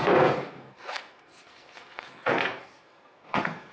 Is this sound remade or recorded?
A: remade